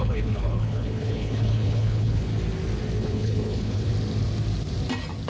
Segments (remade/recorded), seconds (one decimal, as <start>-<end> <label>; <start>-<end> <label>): 0.0-2.3 remade; 2.3-3.0 recorded; 3.0-3.9 remade; 3.9-5.3 recorded